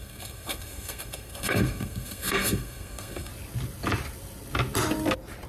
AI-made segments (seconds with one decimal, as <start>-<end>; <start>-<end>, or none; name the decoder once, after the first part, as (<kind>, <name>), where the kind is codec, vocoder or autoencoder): 0.0-3.3 (codec, SNAC)

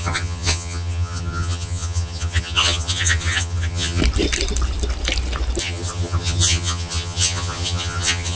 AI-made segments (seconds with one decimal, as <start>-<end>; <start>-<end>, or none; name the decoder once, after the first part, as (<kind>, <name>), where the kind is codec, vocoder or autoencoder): 0.0-4.0 (vocoder, HiFi-GAN); 5.6-8.4

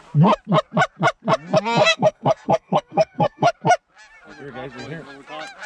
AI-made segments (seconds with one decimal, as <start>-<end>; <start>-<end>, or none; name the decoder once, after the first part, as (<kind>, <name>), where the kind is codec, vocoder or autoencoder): 1.9-3.5 (codec, SNAC)

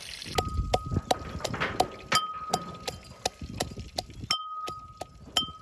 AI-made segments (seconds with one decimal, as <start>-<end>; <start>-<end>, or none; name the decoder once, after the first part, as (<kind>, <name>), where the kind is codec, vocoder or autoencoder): none

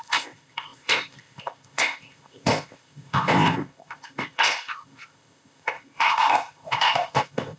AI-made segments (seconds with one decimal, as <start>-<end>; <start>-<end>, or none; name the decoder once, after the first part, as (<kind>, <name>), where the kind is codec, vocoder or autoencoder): 0.0-7.6 (codec, ZipCodec)